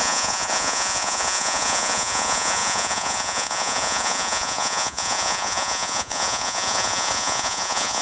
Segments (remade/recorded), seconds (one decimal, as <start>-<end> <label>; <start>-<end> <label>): 0.0-8.0 remade